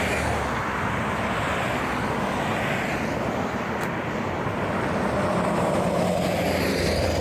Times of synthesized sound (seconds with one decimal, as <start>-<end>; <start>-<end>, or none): 2.9-7.2

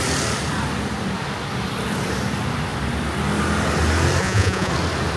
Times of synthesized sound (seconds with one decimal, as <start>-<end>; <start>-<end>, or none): 4.2-4.7

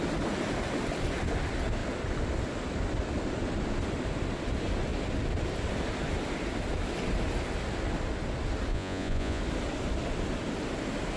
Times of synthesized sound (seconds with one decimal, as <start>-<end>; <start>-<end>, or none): 8.7-9.4

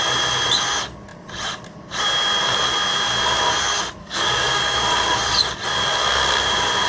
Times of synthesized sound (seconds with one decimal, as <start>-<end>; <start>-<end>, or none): 4.0-4.6

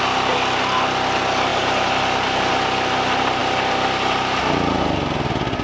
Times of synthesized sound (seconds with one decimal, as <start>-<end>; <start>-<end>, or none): 1.5-2.5